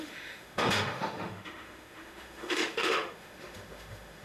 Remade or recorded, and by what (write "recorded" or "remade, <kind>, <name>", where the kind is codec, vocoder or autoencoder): remade, autoencoder, DAC-VAE